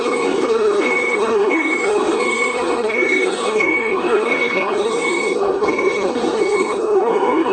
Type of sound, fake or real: fake